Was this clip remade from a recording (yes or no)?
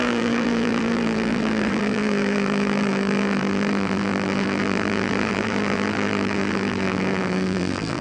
yes